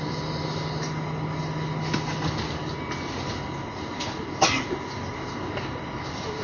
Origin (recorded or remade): recorded